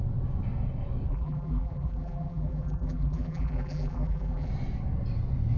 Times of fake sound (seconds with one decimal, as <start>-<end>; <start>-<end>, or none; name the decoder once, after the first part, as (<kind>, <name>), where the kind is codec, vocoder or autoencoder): 1.1-4.5 (vocoder, BigVGAN v2)